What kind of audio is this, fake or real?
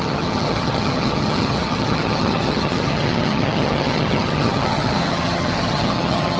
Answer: fake